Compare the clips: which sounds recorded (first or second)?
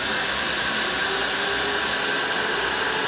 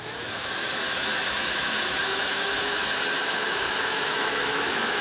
first